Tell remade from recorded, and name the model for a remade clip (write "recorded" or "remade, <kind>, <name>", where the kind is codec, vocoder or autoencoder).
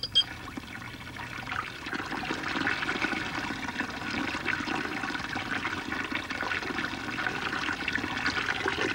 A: recorded